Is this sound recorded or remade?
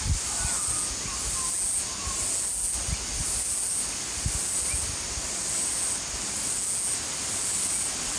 recorded